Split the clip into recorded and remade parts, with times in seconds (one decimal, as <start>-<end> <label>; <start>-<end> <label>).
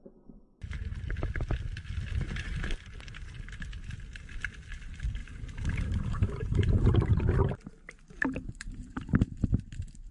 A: 0.0-5.2 recorded; 5.2-9.4 remade; 9.4-10.1 recorded